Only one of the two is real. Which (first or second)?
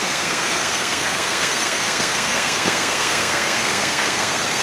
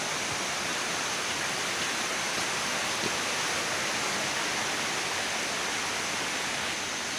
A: second